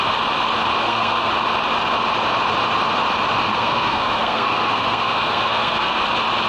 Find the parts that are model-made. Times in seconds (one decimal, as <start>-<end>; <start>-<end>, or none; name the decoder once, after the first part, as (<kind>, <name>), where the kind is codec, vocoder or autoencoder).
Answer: 0.8-1.3 (codec, SNAC); 3.5-6.0